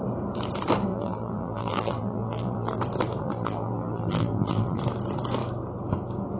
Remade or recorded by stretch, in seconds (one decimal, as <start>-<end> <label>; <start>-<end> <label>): 0.0-0.9 recorded; 0.9-2.8 remade; 2.8-3.2 recorded; 3.2-4.8 remade; 4.8-6.4 recorded